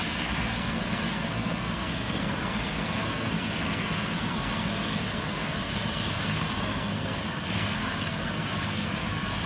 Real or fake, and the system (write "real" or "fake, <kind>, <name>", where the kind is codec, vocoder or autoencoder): fake, codec, SNAC